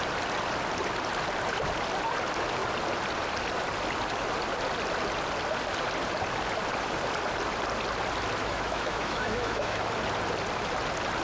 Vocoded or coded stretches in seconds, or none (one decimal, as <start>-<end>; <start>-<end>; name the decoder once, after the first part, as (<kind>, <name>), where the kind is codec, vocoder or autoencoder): 8.4-9.9 (autoencoder, DAC-VAE)